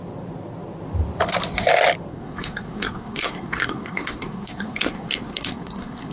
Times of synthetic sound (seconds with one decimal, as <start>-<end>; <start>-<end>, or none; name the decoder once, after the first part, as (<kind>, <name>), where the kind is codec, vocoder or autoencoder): 2.1-6.1 (codec, SNAC)